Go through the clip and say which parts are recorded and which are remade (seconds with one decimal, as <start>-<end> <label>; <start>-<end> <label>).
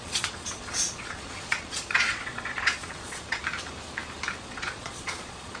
0.0-3.4 remade; 3.4-4.4 recorded; 4.4-5.6 remade